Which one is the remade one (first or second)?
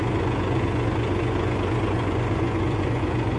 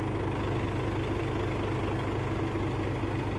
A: first